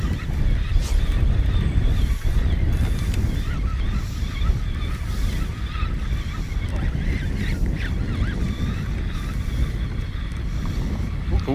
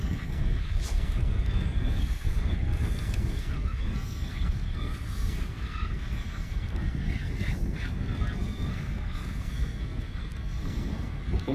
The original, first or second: first